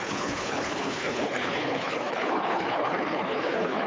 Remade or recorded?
remade